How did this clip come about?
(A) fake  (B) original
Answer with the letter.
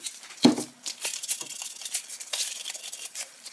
B